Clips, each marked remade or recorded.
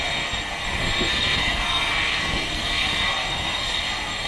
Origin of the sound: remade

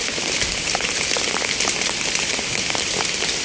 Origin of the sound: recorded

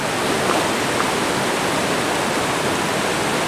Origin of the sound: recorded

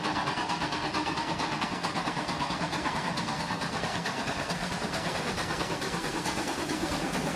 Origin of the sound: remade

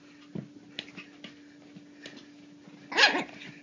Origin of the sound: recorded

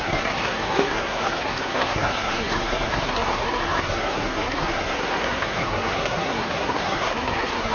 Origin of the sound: remade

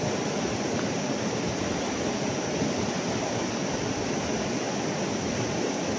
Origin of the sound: recorded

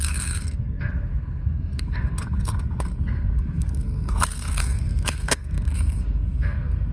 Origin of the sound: remade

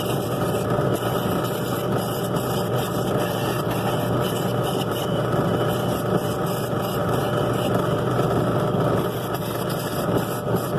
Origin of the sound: recorded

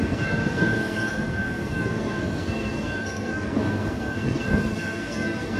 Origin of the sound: remade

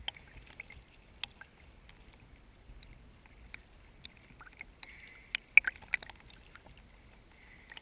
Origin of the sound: recorded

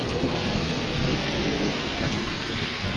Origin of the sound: remade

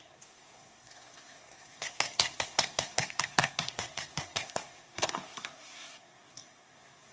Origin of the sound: remade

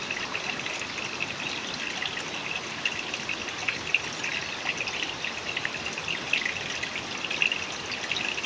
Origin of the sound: recorded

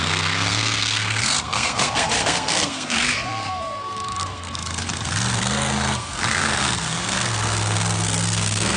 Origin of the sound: remade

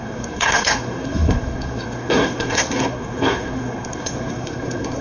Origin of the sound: remade